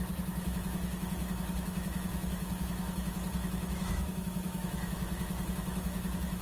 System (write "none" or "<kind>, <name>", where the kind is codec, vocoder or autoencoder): autoencoder, DAC-VAE